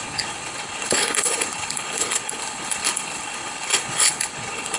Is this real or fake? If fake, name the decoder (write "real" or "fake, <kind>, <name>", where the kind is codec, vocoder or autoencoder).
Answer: fake, codec, HILCodec